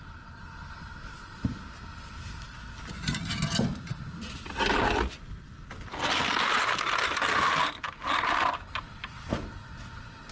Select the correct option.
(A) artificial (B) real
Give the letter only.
B